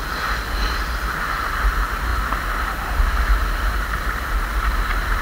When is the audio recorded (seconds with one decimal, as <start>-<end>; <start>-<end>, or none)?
0.0-5.2